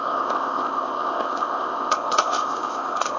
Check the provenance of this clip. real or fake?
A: fake